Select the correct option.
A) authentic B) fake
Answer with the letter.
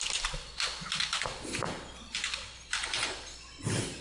A